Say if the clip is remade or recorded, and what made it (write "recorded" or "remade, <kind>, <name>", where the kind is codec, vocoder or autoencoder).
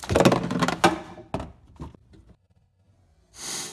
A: recorded